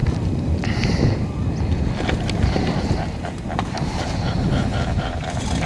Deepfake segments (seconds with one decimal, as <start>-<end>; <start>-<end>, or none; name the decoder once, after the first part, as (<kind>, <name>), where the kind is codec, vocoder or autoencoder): 2.1-5.7 (vocoder, BigVGAN v2)